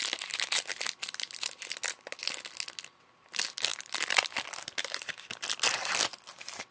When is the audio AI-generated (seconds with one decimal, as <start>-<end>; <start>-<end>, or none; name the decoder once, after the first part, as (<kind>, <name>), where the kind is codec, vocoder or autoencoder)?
3.7-5.1 (vocoder, BigVGAN v2)